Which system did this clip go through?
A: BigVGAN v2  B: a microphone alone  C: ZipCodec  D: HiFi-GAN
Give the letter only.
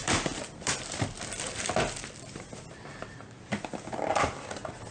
A